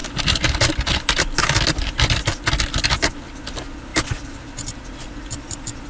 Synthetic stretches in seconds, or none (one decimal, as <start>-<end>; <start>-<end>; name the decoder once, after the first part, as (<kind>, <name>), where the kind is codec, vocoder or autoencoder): none